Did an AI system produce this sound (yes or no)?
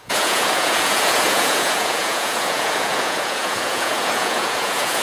yes